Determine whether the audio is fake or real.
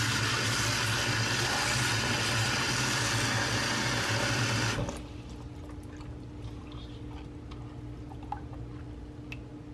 real